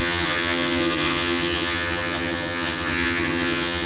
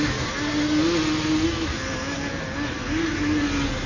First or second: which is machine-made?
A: first